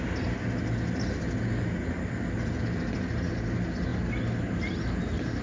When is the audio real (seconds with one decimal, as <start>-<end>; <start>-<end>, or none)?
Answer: 0.0-5.4